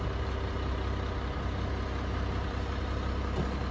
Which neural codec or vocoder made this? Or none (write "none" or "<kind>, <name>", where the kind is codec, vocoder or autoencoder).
none